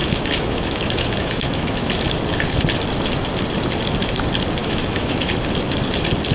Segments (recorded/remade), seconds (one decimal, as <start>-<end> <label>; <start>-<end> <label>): 0.0-1.9 remade; 1.9-4.6 recorded; 4.6-5.3 remade; 5.3-6.3 recorded